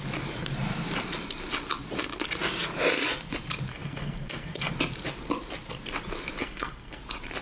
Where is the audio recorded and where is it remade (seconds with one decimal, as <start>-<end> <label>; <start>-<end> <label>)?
0.0-3.7 recorded; 3.7-4.7 remade; 4.7-6.4 recorded; 6.4-7.0 remade; 7.0-7.4 recorded